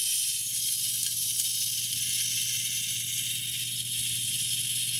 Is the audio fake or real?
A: real